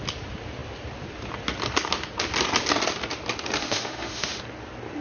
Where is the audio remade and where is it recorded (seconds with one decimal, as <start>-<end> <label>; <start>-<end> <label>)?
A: 0.0-3.6 recorded; 3.6-4.4 remade; 4.4-5.0 recorded